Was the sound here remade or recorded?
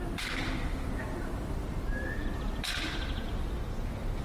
recorded